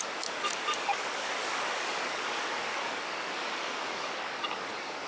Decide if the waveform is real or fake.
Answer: fake